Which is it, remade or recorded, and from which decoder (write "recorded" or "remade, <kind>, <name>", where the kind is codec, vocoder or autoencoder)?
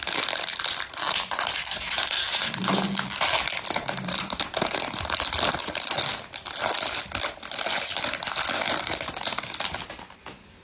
recorded